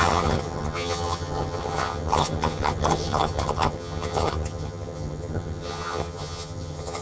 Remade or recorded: remade